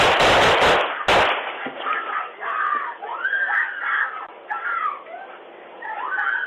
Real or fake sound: real